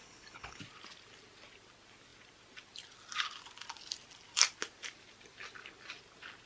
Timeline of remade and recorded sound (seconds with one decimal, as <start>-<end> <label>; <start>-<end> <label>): 0.0-0.6 remade; 0.6-6.5 recorded

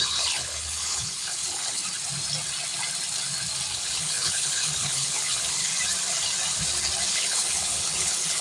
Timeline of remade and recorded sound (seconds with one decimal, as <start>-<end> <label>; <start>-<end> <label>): 0.0-1.8 remade; 1.8-3.7 recorded; 3.7-5.7 remade; 5.7-7.1 recorded; 7.1-8.4 remade

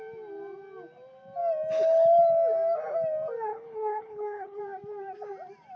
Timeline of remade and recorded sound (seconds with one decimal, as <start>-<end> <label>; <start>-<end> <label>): 0.0-3.5 recorded; 3.5-4.6 remade; 4.6-5.8 recorded

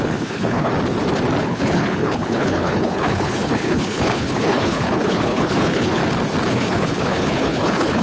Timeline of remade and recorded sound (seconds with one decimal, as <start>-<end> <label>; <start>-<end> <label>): 0.0-0.7 remade; 0.7-1.4 recorded; 1.4-6.0 remade; 6.0-6.5 recorded; 6.5-8.0 remade

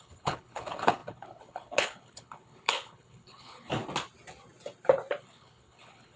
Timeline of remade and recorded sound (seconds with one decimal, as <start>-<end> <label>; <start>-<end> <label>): 0.0-3.8 remade; 3.8-5.2 recorded; 5.2-6.2 remade

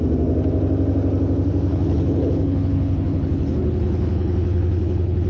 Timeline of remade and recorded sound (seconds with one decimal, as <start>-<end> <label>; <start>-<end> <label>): 0.0-1.7 recorded; 1.7-5.3 remade